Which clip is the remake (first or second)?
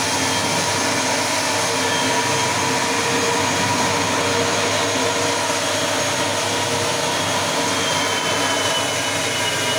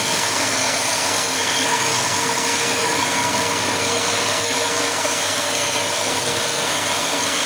second